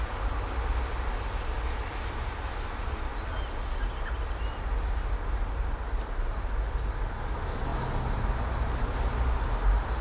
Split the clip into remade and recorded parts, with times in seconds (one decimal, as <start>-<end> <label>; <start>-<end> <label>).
0.0-10.0 recorded